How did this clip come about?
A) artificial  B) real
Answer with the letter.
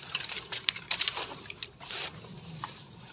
A